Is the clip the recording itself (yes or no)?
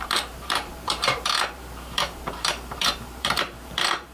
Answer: no